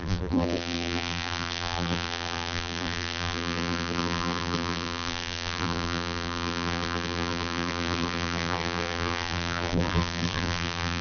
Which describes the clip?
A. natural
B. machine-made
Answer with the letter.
B